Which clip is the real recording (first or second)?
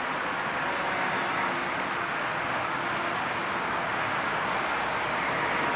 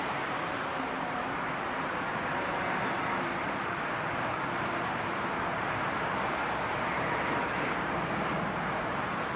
first